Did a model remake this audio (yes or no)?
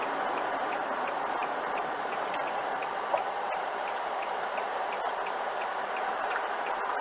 yes